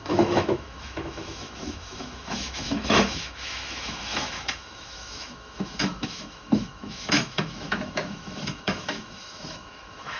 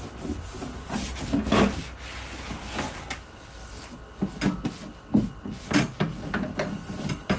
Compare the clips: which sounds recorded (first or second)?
second